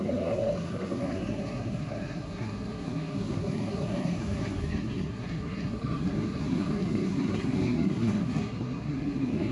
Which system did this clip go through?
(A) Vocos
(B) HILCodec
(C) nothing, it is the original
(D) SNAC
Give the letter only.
D